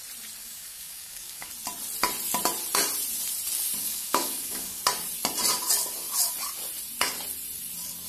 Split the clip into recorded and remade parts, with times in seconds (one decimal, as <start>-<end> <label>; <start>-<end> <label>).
0.0-0.4 recorded; 0.4-1.5 remade; 1.5-3.8 recorded; 3.8-4.8 remade; 4.8-8.1 recorded